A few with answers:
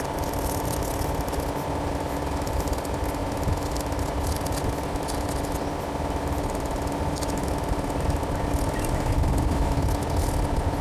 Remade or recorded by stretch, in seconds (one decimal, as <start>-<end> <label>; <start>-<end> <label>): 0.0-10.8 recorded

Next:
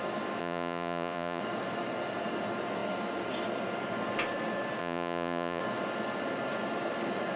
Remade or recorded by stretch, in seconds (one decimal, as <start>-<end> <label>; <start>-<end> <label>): 0.0-0.4 recorded; 0.4-1.4 remade; 1.4-4.8 recorded; 4.8-5.6 remade; 5.6-7.4 recorded

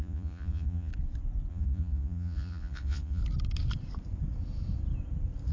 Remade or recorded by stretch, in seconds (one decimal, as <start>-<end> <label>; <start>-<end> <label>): 0.0-0.9 remade; 0.9-1.5 recorded; 1.5-3.2 remade; 3.2-5.5 recorded